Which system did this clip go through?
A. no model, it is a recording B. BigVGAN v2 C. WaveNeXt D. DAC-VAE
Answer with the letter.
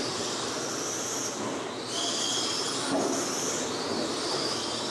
A